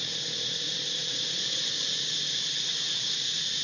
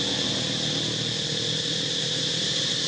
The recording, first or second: second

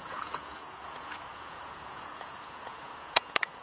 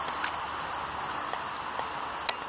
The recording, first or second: second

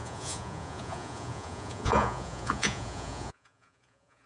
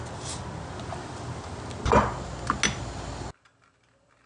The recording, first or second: second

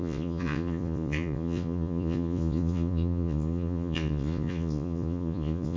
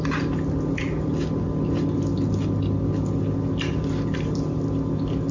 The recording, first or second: second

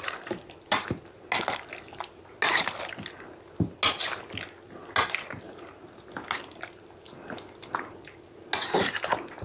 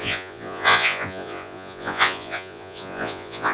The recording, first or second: first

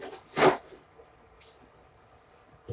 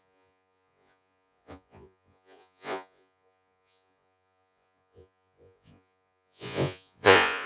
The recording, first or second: first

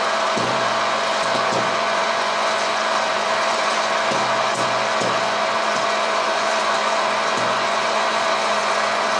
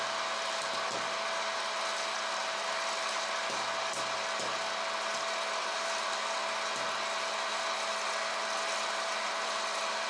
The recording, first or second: second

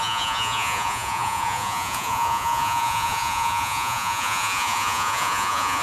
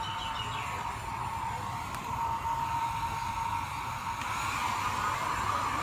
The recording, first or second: second